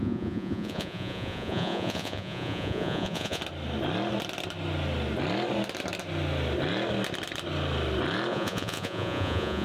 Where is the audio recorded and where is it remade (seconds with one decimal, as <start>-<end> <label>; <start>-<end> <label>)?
0.0-3.4 remade; 3.4-8.3 recorded; 8.3-9.6 remade